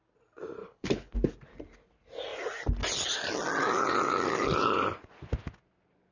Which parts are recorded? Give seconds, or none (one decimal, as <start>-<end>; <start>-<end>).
0.0-0.6; 1.1-6.1